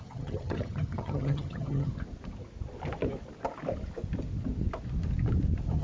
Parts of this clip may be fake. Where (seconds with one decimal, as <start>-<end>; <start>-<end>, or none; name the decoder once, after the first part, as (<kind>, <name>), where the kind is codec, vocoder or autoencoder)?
0.0-1.9 (vocoder, HiFi-GAN)